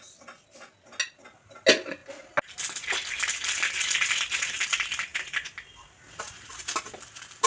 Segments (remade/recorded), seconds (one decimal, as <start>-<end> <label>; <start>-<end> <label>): 0.0-7.5 recorded